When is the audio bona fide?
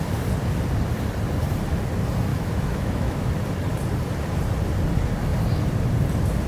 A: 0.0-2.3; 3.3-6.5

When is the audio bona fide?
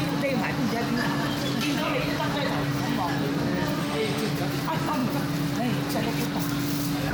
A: 0.0-3.8; 4.3-7.1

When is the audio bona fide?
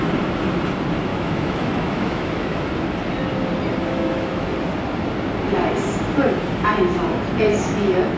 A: 0.0-1.1; 2.6-3.8; 4.5-7.5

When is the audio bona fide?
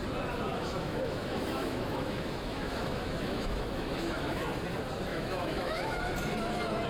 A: 0.0-0.5; 4.4-5.1; 6.0-6.9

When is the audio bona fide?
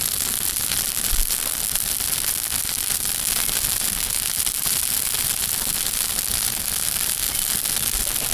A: 0.0-8.3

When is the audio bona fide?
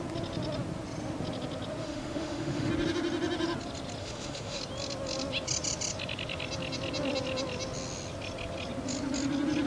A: 0.0-1.8; 2.7-4.0; 4.6-9.7